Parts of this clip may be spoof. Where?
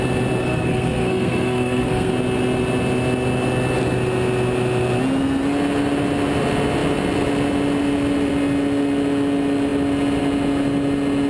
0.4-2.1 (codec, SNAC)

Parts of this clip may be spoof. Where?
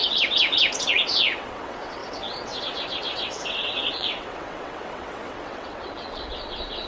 0.0-6.9 (vocoder, WaveNeXt)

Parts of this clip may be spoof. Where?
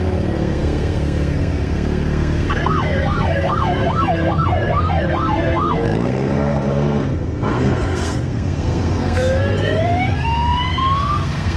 0.0-11.6 (codec, SNAC)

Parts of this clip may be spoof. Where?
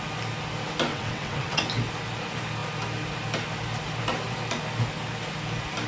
0.9-1.6 (vocoder, WaveNeXt)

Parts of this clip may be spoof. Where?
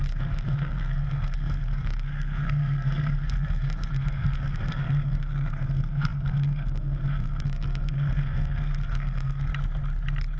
0.0-9.5 (codec, SNAC)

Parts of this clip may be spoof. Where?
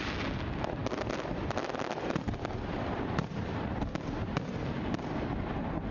none